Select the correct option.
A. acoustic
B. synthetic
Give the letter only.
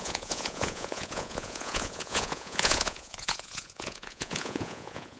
B